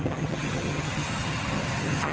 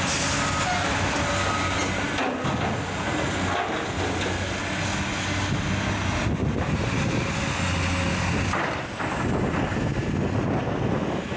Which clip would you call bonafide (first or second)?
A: second